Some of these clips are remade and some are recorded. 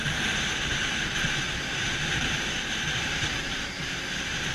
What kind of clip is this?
recorded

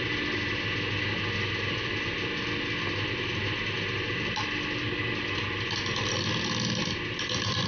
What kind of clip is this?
recorded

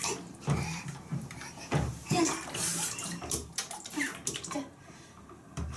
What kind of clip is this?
remade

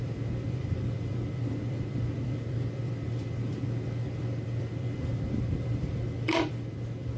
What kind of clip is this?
remade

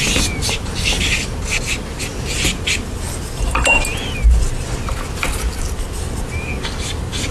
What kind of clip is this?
recorded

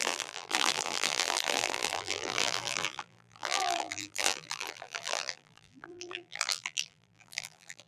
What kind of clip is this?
remade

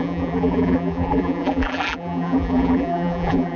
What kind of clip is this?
remade